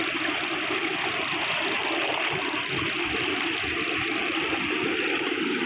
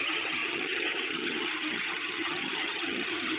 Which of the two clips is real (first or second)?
first